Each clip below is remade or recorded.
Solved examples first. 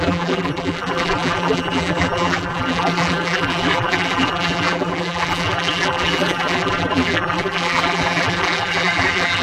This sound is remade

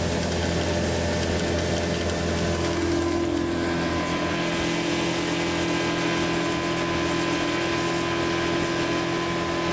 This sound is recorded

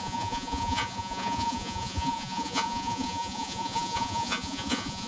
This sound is remade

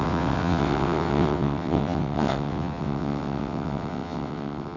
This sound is remade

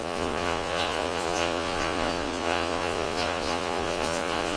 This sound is remade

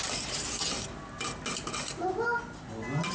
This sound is recorded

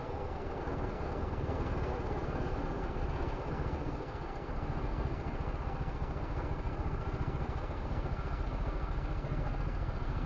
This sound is remade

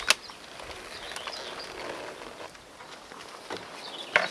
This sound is recorded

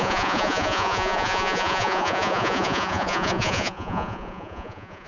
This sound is remade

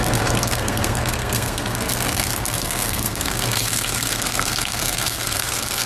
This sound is remade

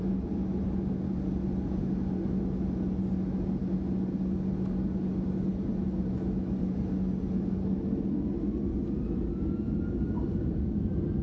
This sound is recorded